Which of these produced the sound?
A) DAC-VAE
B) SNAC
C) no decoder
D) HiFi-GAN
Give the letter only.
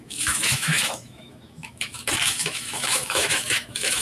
A